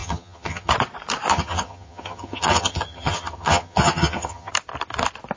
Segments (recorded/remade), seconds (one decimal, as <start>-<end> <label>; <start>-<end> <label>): 0.0-0.7 remade; 0.7-1.3 recorded; 1.3-4.5 remade; 4.5-5.4 recorded